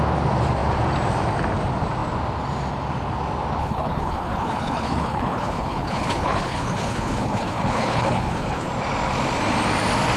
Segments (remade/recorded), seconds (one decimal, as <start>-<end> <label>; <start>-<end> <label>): 0.0-3.6 recorded; 3.6-8.7 remade; 8.7-10.2 recorded